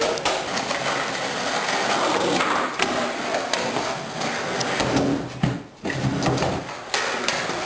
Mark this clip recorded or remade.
recorded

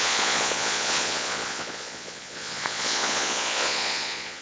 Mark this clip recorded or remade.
remade